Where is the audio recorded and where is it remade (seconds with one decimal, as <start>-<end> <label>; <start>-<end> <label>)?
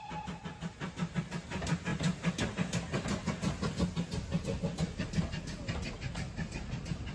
0.0-7.1 recorded